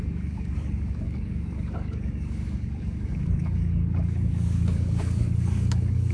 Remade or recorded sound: remade